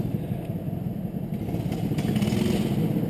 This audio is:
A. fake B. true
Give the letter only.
B